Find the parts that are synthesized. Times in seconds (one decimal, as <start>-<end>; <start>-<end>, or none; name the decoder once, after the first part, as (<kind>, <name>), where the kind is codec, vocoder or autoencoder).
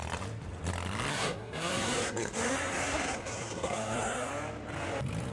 1.1-4.3 (codec, SNAC)